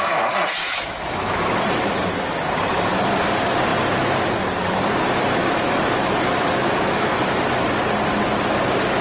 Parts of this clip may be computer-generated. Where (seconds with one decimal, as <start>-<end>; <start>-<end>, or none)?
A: 0.6-1.6; 5.4-7.2